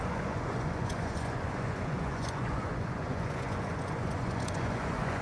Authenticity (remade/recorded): remade